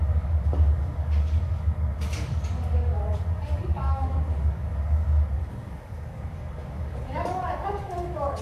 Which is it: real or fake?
fake